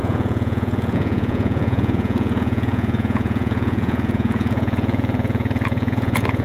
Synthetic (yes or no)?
yes